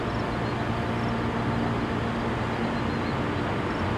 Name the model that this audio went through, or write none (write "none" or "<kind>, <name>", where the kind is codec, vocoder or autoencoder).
none